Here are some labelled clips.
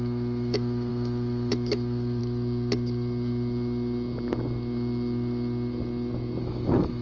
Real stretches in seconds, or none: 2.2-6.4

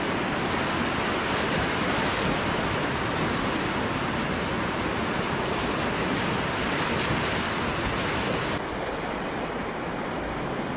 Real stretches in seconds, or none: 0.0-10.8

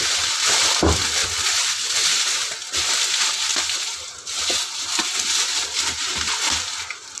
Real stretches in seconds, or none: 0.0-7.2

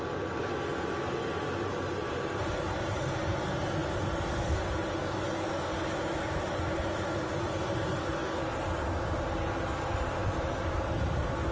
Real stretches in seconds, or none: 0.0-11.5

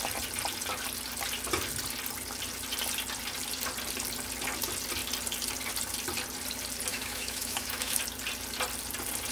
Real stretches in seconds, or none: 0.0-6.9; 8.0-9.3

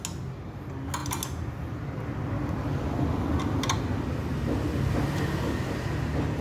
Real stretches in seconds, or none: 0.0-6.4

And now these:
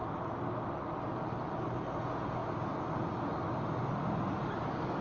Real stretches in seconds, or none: 0.0-5.0

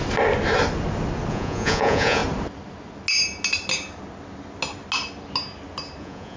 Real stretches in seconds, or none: 0.0-1.3; 2.2-6.0